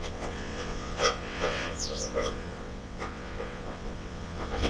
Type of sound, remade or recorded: remade